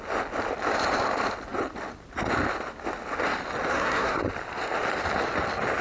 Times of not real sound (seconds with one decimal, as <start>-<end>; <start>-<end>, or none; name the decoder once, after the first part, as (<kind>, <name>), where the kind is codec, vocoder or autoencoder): 3.7-4.2 (codec, SNAC)